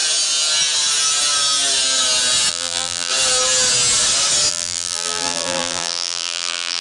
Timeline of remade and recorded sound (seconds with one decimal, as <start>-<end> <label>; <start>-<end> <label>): 0.0-2.5 recorded; 2.5-3.1 remade; 3.1-4.5 recorded; 4.5-6.8 remade